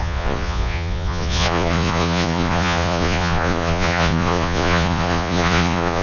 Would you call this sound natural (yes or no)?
no